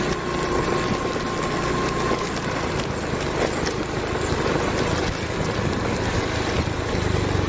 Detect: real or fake real